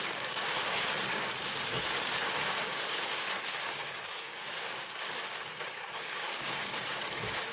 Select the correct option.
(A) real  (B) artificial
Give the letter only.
B